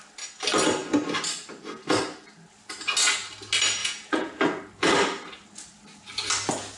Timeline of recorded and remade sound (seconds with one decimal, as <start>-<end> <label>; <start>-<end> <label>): 0.0-3.8 recorded; 3.8-4.4 remade; 4.4-6.8 recorded

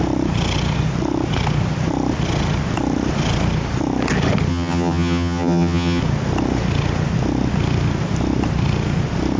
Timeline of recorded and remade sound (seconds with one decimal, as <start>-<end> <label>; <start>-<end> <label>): 0.0-4.5 recorded; 4.5-6.0 remade; 6.0-9.4 recorded

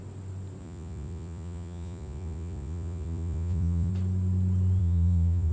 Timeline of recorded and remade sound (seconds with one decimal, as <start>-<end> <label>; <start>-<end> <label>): 0.0-0.6 recorded; 0.6-3.9 remade; 3.9-4.8 recorded; 4.8-5.5 remade

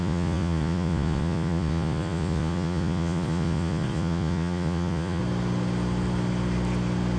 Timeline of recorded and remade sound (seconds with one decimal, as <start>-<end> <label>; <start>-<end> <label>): 0.0-5.2 remade; 5.2-7.2 recorded

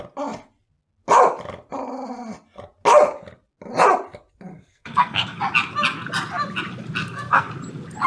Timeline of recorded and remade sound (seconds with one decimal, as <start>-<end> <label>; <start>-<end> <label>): 0.0-4.5 recorded; 4.5-5.4 remade; 5.4-7.0 recorded; 7.0-7.5 remade; 7.5-8.1 recorded